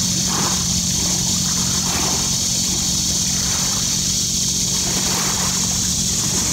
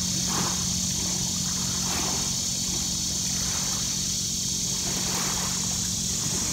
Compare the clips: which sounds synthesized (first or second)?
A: first